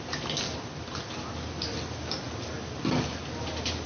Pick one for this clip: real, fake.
real